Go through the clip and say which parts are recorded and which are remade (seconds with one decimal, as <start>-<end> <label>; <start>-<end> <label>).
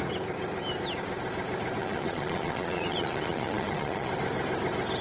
0.0-1.8 recorded; 1.8-4.1 remade; 4.1-5.0 recorded